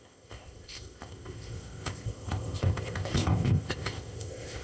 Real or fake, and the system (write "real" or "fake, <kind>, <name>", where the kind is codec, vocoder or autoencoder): fake, codec, ZipCodec